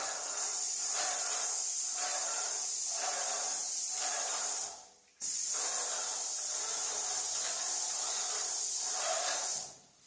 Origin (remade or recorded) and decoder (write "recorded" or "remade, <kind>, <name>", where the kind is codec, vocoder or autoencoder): recorded